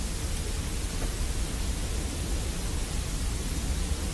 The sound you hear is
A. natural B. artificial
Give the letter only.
A